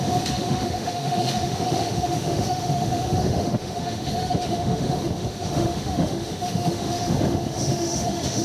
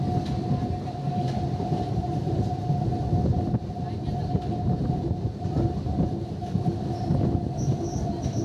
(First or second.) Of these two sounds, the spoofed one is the first